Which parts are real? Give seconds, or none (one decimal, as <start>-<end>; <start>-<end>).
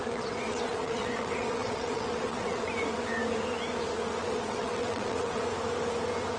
2.7-4.2; 5.4-6.4